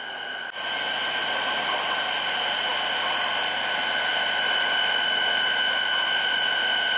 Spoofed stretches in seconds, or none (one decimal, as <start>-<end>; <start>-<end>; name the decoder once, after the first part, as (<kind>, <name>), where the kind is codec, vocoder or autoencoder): none